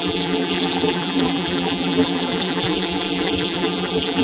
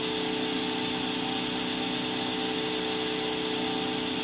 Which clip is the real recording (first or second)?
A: second